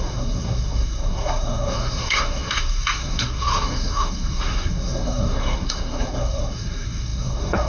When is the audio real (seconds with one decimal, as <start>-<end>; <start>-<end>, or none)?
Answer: none